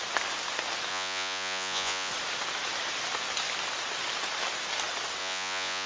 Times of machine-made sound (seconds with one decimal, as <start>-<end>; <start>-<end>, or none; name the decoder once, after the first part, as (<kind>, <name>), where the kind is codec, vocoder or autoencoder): 0.9-2.1 (vocoder, Vocos); 5.2-5.9